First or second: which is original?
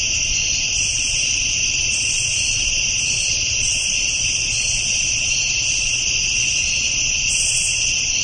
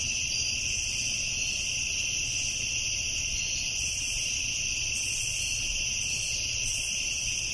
second